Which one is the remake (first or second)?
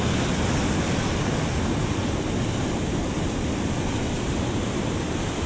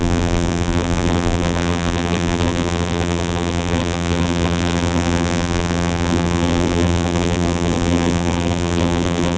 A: second